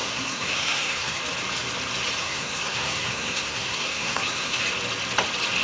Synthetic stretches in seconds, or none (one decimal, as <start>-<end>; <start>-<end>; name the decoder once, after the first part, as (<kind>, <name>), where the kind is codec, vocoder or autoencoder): 0.0-1.2 (codec, SNAC); 2.2-4.6